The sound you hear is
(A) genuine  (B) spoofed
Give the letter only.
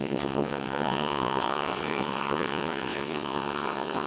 B